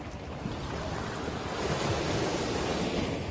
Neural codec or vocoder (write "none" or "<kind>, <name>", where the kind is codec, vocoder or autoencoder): none